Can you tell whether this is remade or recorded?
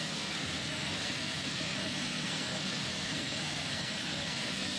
remade